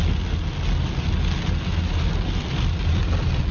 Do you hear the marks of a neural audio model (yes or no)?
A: no